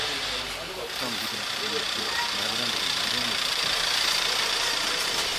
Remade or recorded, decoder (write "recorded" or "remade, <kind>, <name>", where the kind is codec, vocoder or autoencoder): remade, vocoder, BigVGAN v2